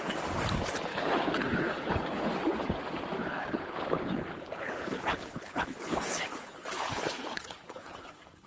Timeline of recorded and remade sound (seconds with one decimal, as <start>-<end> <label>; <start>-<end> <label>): 0.0-0.9 recorded; 0.9-2.3 remade; 2.3-3.2 recorded; 3.2-8.5 remade